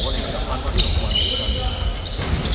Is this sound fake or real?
real